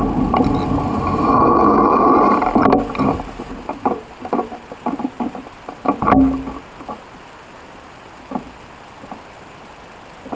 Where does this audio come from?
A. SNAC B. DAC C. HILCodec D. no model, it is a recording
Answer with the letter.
D